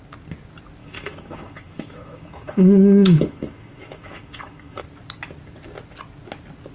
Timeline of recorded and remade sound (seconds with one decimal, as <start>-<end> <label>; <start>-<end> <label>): 0.0-0.8 recorded; 0.8-4.8 remade; 4.8-6.7 recorded